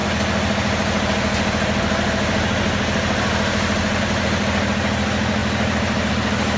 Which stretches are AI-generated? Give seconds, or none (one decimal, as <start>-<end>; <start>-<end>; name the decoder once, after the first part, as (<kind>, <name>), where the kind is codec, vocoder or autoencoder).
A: none